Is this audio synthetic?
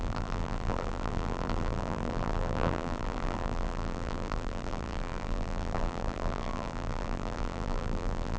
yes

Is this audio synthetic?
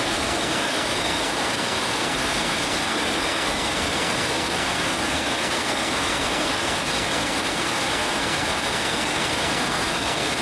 yes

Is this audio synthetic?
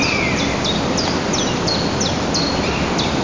no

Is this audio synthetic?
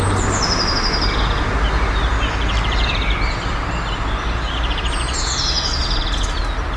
no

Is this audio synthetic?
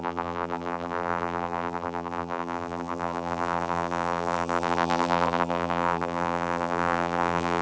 yes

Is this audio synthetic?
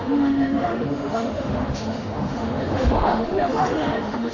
yes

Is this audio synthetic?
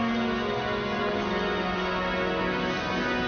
no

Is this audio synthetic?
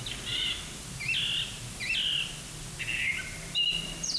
no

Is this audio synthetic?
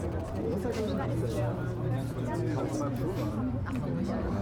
no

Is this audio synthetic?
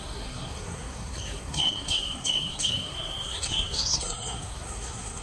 yes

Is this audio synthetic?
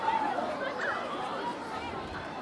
yes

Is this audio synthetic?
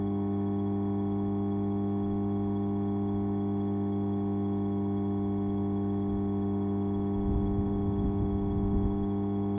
no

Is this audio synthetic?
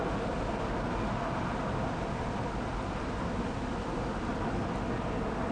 no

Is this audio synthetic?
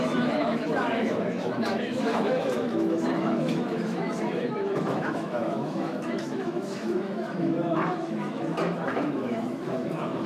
yes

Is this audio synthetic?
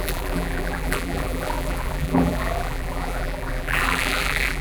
yes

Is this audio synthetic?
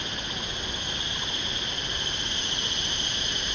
no